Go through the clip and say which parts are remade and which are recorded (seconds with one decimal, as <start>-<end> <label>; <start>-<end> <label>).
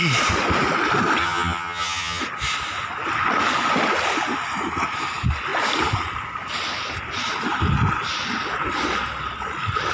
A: 0.0-1.2 recorded; 1.2-2.2 remade; 2.2-9.9 recorded